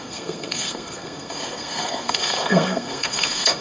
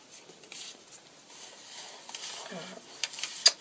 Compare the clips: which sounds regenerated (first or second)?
first